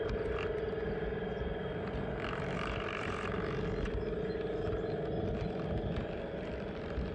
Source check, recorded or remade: recorded